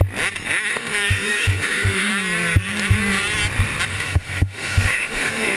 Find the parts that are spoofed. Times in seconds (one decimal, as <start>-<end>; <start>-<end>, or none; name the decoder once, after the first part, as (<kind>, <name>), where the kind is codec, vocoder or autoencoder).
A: 0.7-2.1 (autoencoder, DAC-VAE); 3.9-5.6